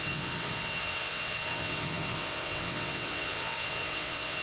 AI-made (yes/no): yes